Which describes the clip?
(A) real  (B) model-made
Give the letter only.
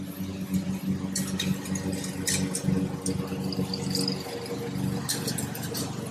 A